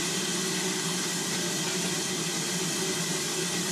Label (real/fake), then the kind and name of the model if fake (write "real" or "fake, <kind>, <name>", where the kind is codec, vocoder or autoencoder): real